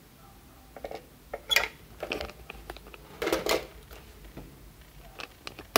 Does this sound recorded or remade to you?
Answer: recorded